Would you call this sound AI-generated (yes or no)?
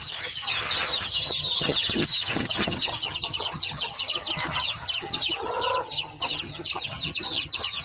yes